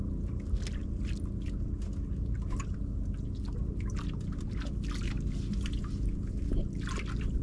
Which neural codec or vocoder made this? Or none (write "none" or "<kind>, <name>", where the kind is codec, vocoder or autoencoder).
none